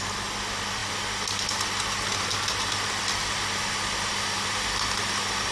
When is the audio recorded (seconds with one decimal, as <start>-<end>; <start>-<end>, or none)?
0.0-5.5